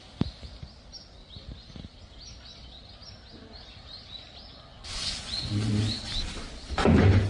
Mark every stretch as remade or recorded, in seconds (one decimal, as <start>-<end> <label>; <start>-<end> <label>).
0.0-4.7 recorded; 4.7-5.7 remade; 5.7-7.3 recorded